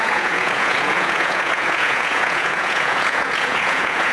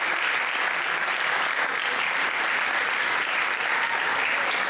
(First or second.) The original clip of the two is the second